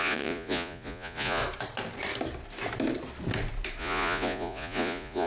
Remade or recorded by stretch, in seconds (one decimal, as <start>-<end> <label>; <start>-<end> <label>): 0.0-1.4 remade; 1.4-3.8 recorded; 3.8-5.3 remade